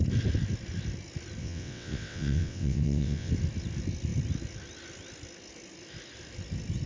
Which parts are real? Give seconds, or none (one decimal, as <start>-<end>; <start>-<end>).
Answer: 0.0-1.4; 3.3-6.9

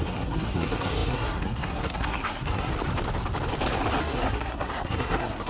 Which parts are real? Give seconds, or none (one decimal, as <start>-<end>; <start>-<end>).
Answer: 2.7-4.0

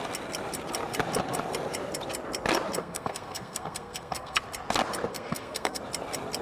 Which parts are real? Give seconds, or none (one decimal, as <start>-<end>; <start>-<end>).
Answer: 0.0-2.8; 4.4-5.1; 5.8-6.4